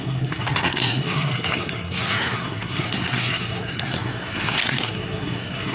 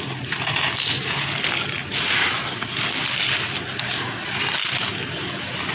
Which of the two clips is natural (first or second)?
second